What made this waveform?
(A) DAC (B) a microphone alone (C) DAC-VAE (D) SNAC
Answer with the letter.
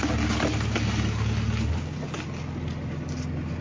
B